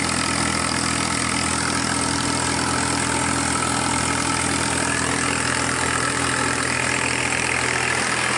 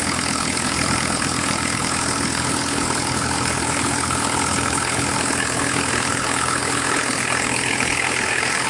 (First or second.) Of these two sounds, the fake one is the second